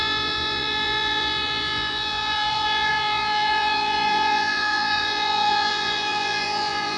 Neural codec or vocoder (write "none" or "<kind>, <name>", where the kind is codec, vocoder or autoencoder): vocoder, Vocos